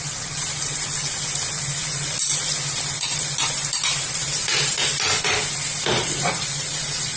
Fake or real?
real